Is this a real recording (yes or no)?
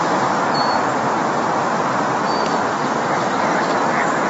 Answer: yes